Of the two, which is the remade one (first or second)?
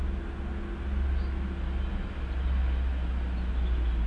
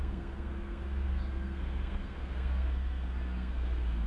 second